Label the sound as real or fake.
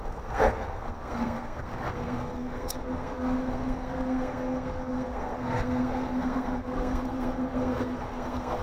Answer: fake